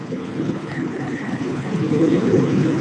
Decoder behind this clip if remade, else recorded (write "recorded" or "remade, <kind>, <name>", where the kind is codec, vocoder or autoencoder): remade, codec, HILCodec